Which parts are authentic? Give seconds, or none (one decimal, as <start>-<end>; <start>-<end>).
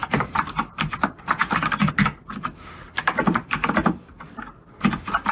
1.9-5.3